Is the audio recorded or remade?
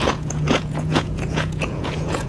remade